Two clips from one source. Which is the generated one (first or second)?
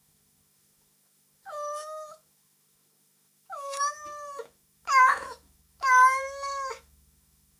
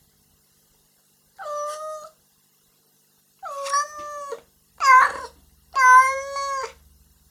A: first